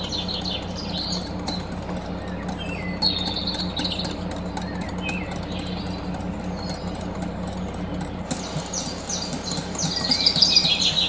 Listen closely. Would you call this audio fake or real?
real